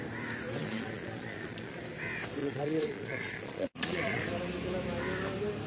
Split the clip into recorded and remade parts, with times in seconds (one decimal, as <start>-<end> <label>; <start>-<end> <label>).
0.0-0.6 recorded; 0.6-1.8 remade; 1.8-2.4 recorded; 2.4-4.3 remade; 4.3-5.7 recorded